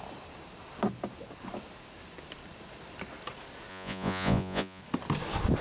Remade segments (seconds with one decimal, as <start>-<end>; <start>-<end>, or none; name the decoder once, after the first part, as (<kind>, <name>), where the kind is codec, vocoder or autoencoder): 3.7-4.8 (vocoder, Vocos)